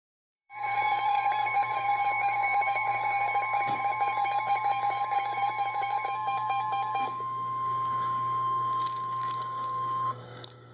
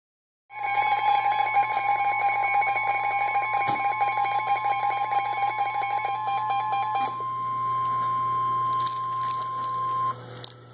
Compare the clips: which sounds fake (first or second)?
first